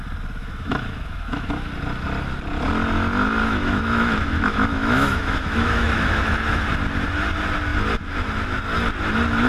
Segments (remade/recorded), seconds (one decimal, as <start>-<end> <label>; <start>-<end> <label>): 0.0-0.4 recorded; 0.4-1.7 remade; 1.7-3.4 recorded; 3.4-6.6 remade; 6.6-9.5 recorded